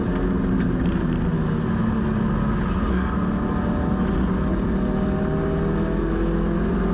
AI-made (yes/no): no